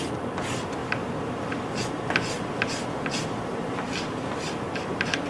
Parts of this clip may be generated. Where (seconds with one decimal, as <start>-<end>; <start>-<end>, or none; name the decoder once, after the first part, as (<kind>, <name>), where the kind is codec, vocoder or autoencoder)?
0.0-0.8 (vocoder, BigVGAN v2); 1.5-5.3